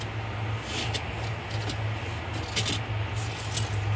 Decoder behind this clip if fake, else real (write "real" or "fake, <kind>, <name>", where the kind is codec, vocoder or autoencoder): real